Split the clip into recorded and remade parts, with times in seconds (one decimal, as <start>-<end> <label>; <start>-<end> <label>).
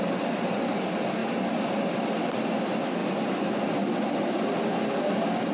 0.0-5.5 recorded